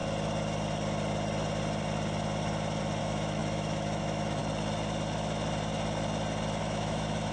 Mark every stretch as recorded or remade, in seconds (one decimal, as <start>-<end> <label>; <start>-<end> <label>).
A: 0.0-3.0 recorded; 3.0-4.4 remade; 4.4-6.6 recorded; 6.6-7.3 remade